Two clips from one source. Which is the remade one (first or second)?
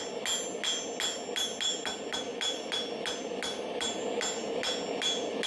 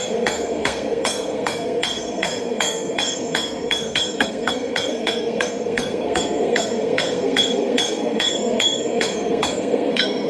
second